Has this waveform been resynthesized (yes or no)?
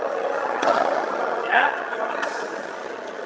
yes